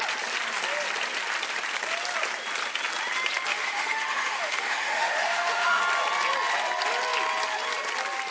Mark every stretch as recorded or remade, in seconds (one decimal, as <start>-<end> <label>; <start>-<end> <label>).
0.0-3.5 recorded; 3.5-5.8 remade; 5.8-8.3 recorded